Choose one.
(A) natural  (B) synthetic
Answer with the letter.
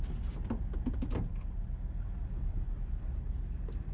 A